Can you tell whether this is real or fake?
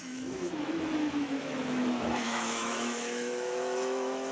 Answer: fake